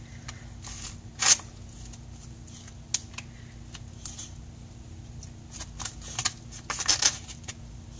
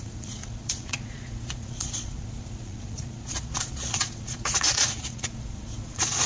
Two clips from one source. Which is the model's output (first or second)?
second